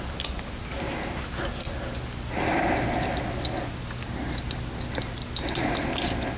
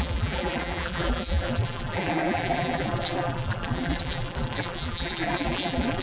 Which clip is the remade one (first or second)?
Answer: second